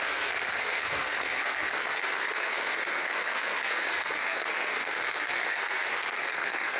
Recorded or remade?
remade